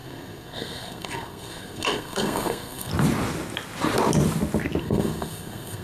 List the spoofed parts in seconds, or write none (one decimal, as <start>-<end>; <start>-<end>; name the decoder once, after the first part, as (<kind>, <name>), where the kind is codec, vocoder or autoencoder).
0.0-2.9 (codec, SNAC); 4.8-5.8

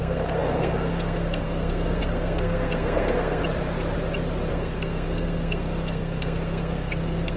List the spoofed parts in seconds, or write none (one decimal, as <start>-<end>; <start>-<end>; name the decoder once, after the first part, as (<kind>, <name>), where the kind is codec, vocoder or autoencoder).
0.0-3.4 (codec, SNAC); 4.5-7.4

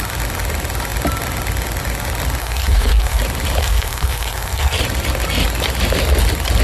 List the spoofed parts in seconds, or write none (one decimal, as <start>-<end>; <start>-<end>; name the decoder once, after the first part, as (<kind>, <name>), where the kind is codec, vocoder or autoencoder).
2.4-3.2 (codec, SNAC); 3.6-4.8